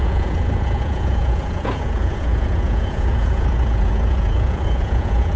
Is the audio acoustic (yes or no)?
no